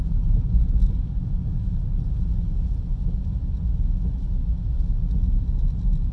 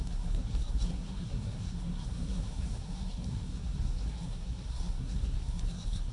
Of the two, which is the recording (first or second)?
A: first